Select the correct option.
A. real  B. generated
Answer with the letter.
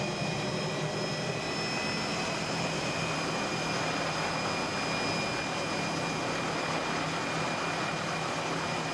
A